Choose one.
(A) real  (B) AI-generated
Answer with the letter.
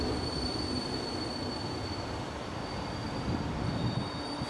A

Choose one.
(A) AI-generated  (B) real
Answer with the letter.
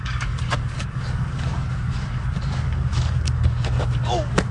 A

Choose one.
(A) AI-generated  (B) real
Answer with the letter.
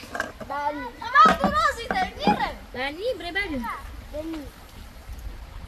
B